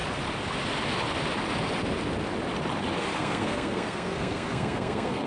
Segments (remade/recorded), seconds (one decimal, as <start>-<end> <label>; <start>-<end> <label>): 0.0-3.2 recorded; 3.2-5.3 remade